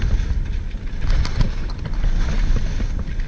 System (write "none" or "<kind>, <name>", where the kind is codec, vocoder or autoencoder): none